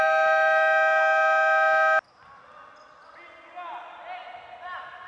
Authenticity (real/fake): real